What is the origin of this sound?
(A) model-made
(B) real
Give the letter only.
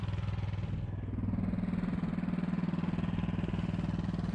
B